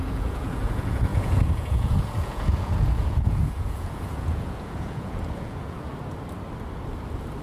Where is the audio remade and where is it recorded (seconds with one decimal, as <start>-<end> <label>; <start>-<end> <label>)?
0.0-5.9 remade; 5.9-7.4 recorded